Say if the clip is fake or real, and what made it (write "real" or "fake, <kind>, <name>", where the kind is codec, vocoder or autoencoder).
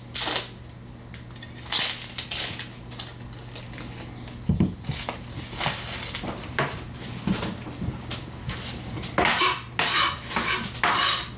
real